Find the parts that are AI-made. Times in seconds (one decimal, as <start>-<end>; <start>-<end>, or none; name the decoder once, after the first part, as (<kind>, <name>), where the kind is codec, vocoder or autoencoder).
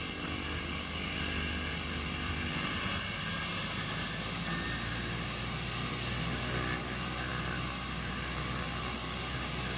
none